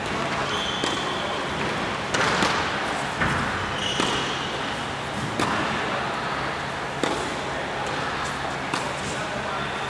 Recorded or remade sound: recorded